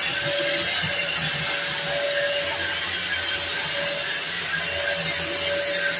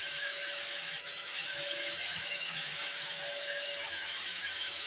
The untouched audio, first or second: first